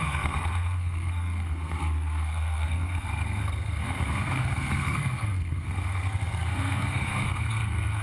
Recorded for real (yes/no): no